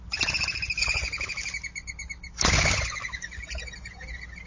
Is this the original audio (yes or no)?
yes